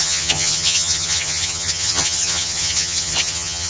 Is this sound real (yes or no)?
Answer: no